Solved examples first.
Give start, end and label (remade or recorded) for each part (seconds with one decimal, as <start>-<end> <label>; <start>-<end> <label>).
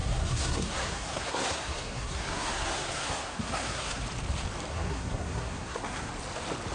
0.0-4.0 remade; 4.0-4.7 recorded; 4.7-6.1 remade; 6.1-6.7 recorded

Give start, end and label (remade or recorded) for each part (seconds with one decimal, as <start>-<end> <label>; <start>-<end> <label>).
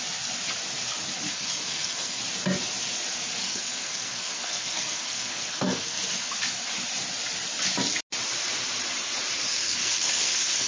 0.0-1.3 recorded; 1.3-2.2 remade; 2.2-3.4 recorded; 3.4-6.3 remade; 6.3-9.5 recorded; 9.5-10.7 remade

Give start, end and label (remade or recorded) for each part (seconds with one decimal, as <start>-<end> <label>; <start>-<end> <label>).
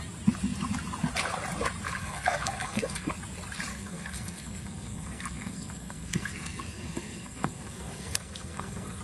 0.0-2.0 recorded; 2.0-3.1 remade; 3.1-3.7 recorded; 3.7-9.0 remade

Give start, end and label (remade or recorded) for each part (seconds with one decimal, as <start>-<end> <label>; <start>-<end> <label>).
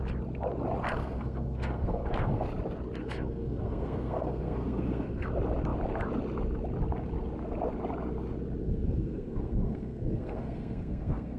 0.0-1.0 recorded; 1.0-2.5 remade; 2.5-3.0 recorded; 3.0-5.3 remade; 5.3-8.6 recorded; 8.6-11.4 remade